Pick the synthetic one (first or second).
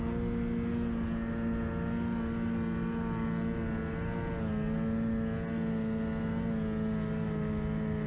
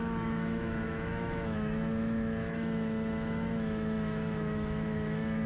second